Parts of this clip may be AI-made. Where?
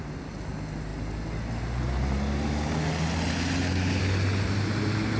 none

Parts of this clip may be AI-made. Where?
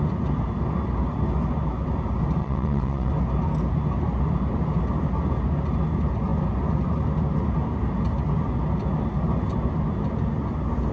2.4-3.1 (vocoder, WaveNeXt)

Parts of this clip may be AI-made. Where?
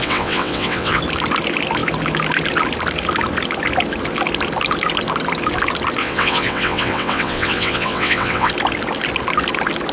0.0-1.0 (vocoder, WaveNeXt); 6.0-8.5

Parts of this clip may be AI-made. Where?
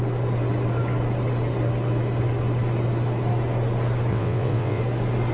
4.1-4.8 (vocoder, WaveNeXt)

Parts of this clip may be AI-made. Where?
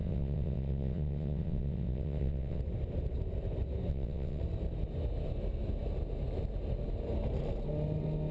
0.0-2.6 (vocoder, WaveNeXt); 3.9-4.4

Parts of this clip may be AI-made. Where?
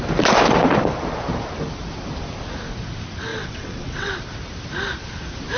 3.3-4.1 (vocoder, WaveNeXt)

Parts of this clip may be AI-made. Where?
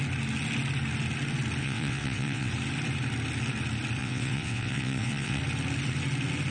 1.6-2.5 (vocoder, WaveNeXt); 4.0-5.4